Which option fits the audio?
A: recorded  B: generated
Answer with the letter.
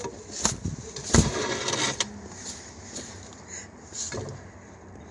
A